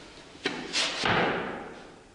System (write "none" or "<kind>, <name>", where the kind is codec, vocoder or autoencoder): none